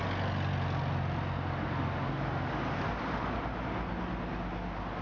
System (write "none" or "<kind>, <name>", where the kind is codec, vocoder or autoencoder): none